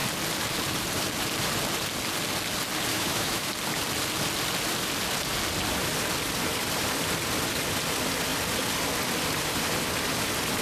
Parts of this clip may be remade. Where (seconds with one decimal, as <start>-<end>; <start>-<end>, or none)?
2.9-3.5